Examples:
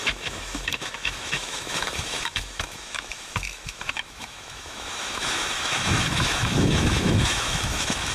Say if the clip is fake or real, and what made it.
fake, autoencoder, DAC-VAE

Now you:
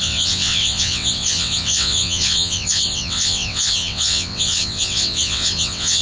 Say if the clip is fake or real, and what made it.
fake, vocoder, WaveNeXt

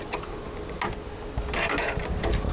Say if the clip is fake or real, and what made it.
real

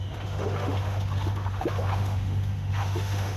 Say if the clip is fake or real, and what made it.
fake, autoencoder, DAC-VAE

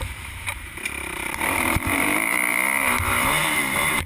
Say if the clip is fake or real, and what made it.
fake, vocoder, BigVGAN v2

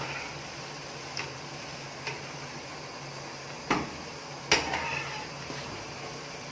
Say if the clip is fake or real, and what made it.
real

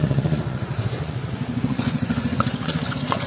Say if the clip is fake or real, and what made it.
fake, vocoder, Vocos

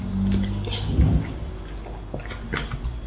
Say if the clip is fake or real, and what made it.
real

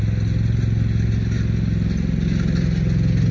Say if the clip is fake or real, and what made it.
real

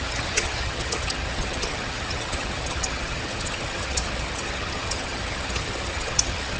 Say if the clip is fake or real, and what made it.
fake, vocoder, HiFi-GAN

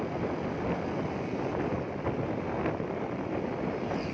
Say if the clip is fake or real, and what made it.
real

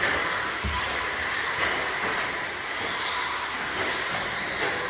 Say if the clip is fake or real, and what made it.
real